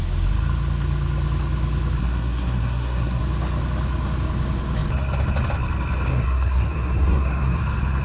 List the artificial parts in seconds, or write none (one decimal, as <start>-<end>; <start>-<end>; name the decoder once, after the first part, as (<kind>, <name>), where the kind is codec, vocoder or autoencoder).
2.0-3.2 (codec, SNAC); 6.1-7.6